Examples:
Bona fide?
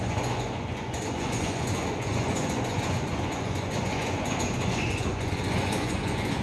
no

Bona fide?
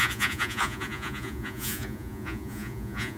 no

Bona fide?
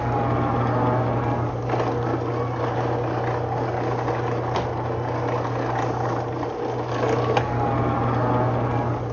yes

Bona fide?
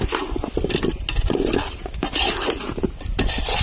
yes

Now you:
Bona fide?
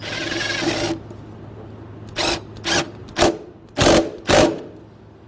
yes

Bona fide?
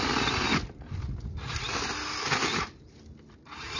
yes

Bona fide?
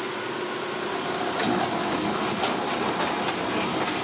yes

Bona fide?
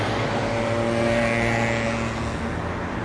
yes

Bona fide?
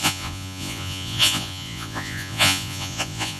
no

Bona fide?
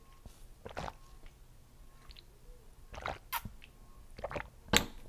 yes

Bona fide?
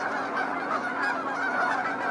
no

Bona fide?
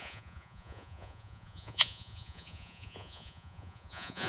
no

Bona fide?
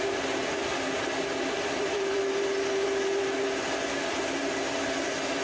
yes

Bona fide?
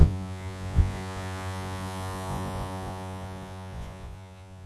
no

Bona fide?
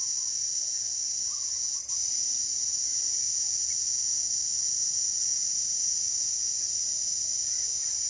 yes